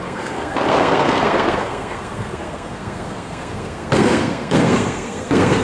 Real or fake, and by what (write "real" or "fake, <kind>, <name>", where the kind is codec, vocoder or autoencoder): fake, codec, SNAC